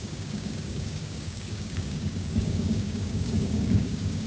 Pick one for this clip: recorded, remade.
remade